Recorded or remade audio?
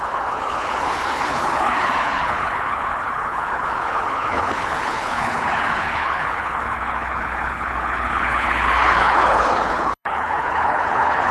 remade